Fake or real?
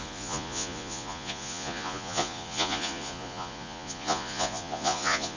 fake